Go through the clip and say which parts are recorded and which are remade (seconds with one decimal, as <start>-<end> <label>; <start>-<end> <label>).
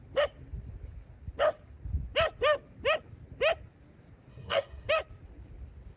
0.0-4.3 recorded; 4.3-4.9 remade; 4.9-6.0 recorded